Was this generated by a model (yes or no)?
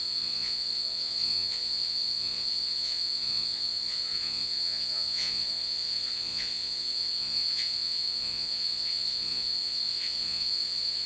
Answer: yes